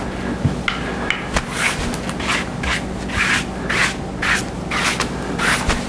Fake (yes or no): no